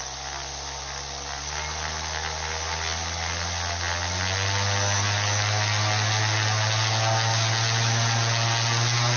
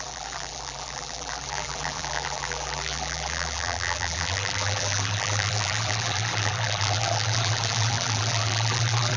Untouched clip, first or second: first